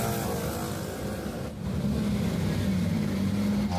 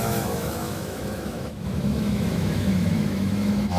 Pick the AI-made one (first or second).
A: second